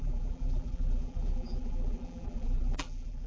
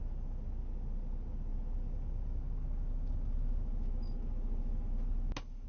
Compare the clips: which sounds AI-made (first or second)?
first